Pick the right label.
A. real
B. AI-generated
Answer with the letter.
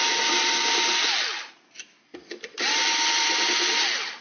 A